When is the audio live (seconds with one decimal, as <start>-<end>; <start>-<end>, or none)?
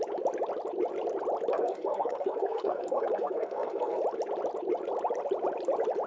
0.0-1.5; 4.0-6.1